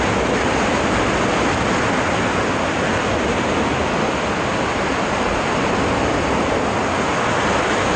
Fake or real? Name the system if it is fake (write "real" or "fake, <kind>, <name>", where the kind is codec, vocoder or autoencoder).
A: real